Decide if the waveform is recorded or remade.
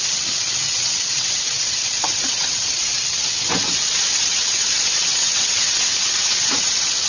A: remade